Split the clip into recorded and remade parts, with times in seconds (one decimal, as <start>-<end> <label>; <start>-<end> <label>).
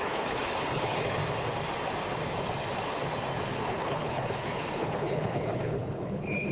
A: 0.0-1.2 remade; 1.2-3.7 recorded; 3.7-6.5 remade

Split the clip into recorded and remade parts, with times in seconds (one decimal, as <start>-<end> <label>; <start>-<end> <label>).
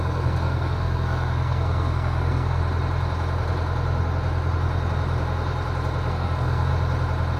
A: 0.0-2.6 remade; 2.6-6.1 recorded; 6.1-6.7 remade; 6.7-7.4 recorded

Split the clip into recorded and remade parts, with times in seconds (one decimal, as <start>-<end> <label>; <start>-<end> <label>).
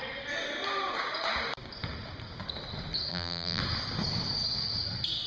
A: 0.0-3.1 recorded; 3.1-3.6 remade; 3.6-5.3 recorded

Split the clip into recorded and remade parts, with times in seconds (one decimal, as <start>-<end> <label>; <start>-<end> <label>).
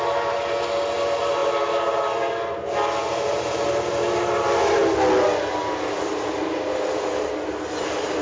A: 0.0-1.4 recorded; 1.4-2.0 remade; 2.0-3.3 recorded; 3.3-3.9 remade; 3.9-8.2 recorded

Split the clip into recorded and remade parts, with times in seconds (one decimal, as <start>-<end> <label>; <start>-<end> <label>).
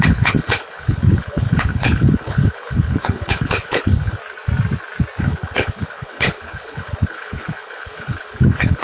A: 0.0-4.2 remade; 4.2-5.2 recorded; 5.2-8.8 remade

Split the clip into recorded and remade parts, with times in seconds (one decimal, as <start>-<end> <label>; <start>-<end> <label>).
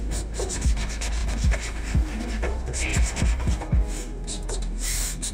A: 0.0-5.3 remade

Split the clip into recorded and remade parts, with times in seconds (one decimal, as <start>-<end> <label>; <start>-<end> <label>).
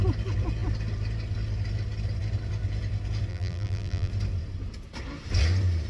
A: 0.0-3.3 recorded; 3.3-4.1 remade; 4.1-5.9 recorded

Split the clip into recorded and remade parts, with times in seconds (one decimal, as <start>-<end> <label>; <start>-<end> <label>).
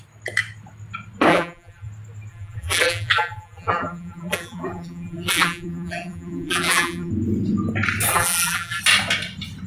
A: 0.0-1.3 recorded; 1.3-1.9 remade; 1.9-2.3 recorded; 2.3-7.1 remade; 7.1-8.1 recorded; 8.1-8.8 remade; 8.8-9.7 recorded